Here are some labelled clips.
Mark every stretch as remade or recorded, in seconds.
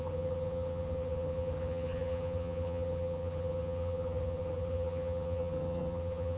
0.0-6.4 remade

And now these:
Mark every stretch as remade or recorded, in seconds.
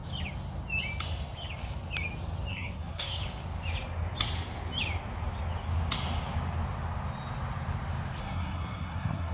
0.0-2.5 recorded; 2.5-3.2 remade; 3.2-8.2 recorded; 8.2-9.3 remade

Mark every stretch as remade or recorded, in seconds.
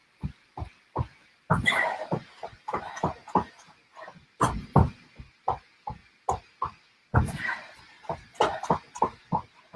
0.0-9.8 recorded